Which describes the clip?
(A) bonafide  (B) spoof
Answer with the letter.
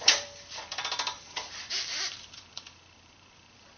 B